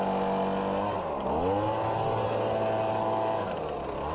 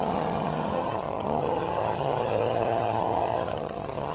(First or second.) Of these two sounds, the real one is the first